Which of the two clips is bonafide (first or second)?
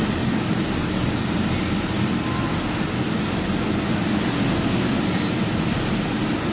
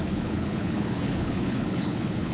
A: first